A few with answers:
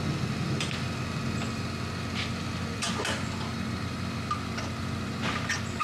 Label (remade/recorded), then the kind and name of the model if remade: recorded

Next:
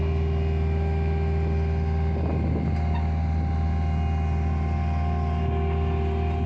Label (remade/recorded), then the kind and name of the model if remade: recorded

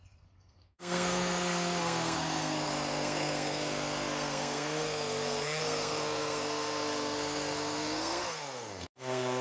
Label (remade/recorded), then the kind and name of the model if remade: remade, codec, SNAC